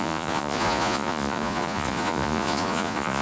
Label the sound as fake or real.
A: fake